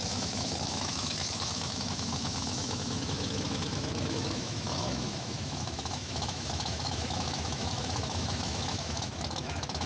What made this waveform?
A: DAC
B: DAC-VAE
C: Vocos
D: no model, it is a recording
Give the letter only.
B